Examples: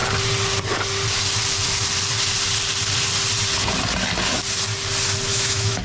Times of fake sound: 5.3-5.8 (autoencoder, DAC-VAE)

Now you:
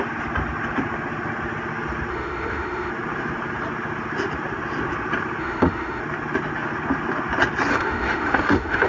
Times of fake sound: 2.1-2.9 (autoencoder, DAC-VAE); 5.4-6.0; 7.7-8.9

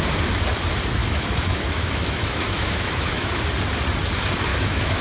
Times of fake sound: 1.0-3.4 (autoencoder, DAC-VAE); 4.5-5.0